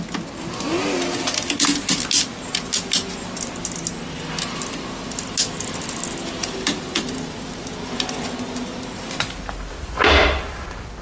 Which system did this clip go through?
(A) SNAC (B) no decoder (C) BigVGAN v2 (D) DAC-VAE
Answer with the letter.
B